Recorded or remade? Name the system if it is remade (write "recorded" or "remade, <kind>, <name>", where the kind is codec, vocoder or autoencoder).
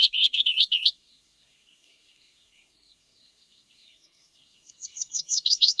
remade, codec, SNAC